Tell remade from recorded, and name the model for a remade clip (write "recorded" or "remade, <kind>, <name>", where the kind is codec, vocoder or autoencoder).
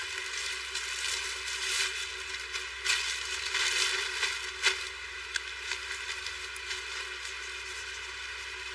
recorded